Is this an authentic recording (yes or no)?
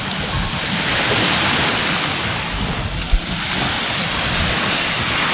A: yes